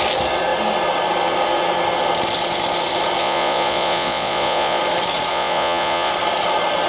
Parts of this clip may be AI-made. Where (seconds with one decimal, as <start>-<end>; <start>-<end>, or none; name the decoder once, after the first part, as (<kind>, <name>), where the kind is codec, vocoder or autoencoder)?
3.2-4.8 (vocoder, Vocos); 5.3-6.1